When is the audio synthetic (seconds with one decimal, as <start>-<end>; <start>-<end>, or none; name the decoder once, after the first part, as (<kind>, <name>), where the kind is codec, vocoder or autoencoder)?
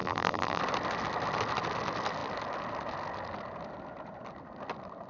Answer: 0.0-0.6 (vocoder, BigVGAN v2)